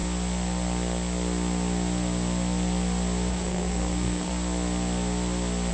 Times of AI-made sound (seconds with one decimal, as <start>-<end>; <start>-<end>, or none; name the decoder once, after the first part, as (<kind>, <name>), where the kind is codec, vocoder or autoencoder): 3.3-4.3 (codec, SNAC)